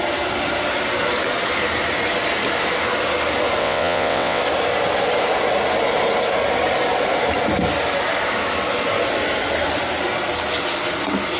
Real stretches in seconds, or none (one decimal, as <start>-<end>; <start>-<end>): 0.0-3.6; 4.4-11.4